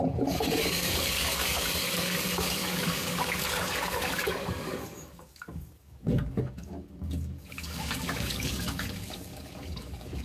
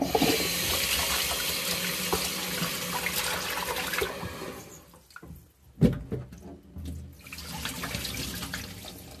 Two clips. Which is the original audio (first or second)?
second